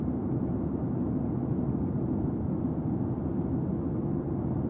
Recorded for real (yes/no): yes